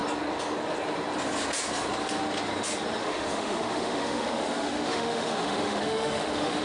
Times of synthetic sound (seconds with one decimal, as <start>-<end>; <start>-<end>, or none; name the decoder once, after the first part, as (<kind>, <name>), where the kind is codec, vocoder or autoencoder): 3.0-6.6 (autoencoder, DAC-VAE)